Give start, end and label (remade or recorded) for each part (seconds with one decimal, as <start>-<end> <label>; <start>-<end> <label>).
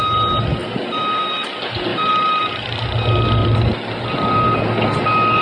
0.0-1.9 recorded; 1.9-2.4 remade; 2.4-3.4 recorded; 3.4-4.1 remade; 4.1-5.4 recorded